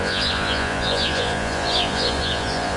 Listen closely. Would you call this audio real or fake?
fake